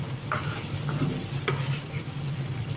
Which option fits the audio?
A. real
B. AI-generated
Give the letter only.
A